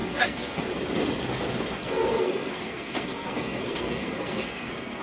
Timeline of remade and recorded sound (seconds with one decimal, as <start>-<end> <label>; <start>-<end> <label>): 0.0-0.6 remade; 0.6-1.8 recorded; 1.8-5.0 remade